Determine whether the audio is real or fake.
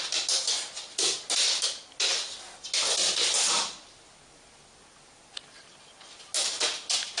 real